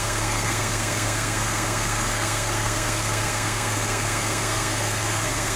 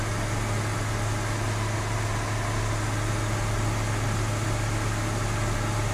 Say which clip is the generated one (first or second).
first